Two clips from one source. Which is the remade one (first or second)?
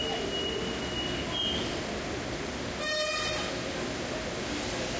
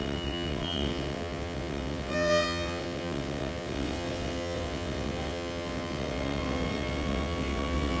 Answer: second